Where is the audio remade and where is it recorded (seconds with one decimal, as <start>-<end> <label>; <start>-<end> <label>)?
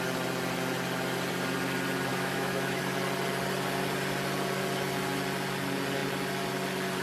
0.0-2.1 recorded; 2.1-2.8 remade; 2.8-7.0 recorded